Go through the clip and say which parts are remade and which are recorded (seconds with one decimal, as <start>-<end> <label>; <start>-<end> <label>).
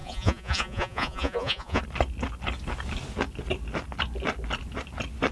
0.0-1.8 remade; 1.8-5.3 recorded